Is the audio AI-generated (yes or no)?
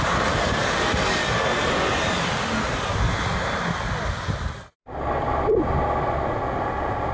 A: no